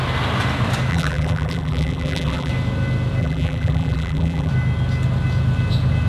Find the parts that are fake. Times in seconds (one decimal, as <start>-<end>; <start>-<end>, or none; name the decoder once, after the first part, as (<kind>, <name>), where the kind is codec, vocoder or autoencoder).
0.9-2.5 (vocoder, BigVGAN v2); 3.2-4.5